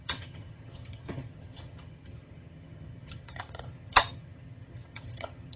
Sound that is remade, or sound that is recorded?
remade